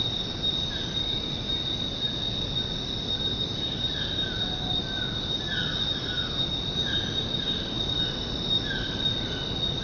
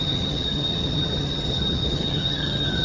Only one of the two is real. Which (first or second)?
first